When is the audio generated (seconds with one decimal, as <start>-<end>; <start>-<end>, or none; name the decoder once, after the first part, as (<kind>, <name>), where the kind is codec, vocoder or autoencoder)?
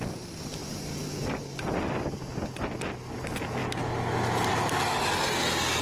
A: 0.6-1.4 (vocoder, BigVGAN v2)